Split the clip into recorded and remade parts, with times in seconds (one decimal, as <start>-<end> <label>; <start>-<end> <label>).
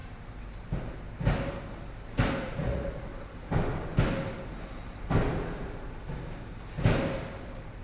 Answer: 0.0-2.4 recorded; 2.4-3.1 remade; 3.1-7.8 recorded